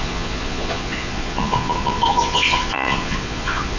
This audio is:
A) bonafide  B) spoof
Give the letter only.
B